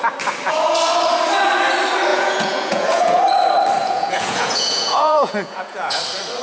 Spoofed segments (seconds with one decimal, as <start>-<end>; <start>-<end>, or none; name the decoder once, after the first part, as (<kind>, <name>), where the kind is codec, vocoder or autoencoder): 2.1-3.2 (vocoder, Vocos); 3.8-6.0